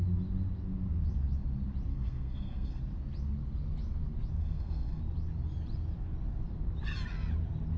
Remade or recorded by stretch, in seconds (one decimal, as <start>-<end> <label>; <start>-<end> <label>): 0.0-1.9 recorded; 1.9-2.8 remade; 2.8-4.4 recorded; 4.4-5.0 remade; 5.0-7.8 recorded